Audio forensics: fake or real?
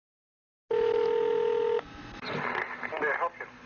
real